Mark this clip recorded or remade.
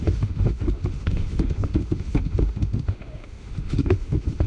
remade